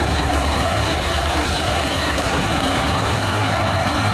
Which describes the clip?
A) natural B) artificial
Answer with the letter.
B